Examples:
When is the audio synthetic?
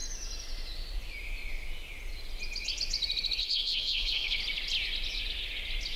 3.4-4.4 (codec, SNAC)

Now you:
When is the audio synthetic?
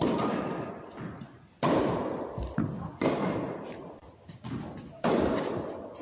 none